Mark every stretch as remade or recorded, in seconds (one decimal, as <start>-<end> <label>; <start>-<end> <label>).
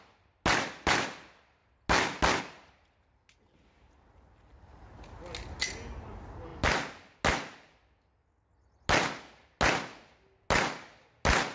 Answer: 0.0-11.5 recorded